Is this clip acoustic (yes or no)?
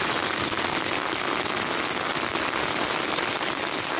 yes